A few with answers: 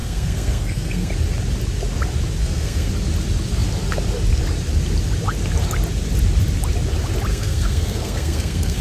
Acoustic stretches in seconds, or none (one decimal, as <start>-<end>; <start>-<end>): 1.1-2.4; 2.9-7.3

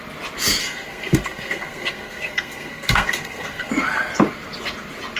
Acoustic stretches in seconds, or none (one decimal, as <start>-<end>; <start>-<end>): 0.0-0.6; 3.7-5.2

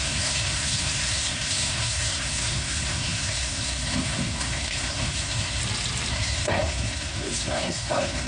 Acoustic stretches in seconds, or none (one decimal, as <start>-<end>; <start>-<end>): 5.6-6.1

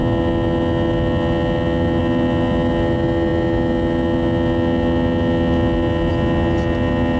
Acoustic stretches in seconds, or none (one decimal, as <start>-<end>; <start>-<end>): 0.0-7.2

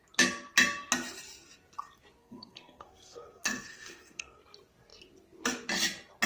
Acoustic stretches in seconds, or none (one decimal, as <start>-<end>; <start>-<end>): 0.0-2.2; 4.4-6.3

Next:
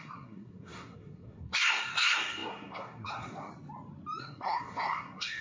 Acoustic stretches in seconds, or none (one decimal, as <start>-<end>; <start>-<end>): 3.5-4.2

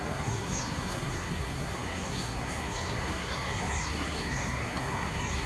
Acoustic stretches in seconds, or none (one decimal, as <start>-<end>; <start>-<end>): none

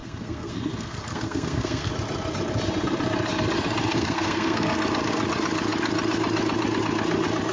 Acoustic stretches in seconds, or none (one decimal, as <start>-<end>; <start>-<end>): 1.9-3.9; 4.7-7.5